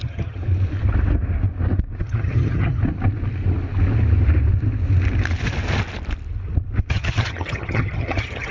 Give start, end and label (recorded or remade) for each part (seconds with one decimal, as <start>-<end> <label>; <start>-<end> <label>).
0.0-0.4 remade; 0.4-2.0 recorded; 2.0-2.8 remade; 2.8-6.9 recorded; 6.9-8.5 remade